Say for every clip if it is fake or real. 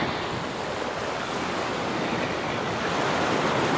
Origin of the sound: real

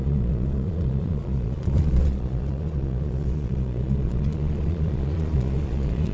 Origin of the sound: fake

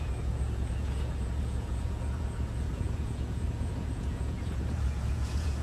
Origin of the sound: fake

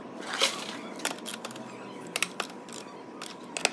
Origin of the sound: real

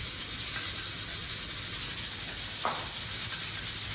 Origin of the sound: real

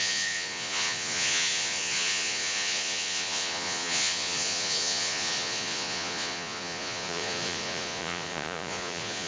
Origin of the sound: fake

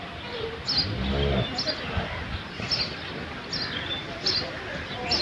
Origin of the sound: real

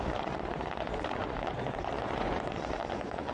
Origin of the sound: fake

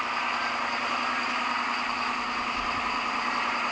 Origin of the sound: real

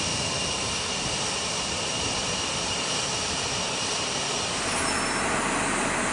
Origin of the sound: real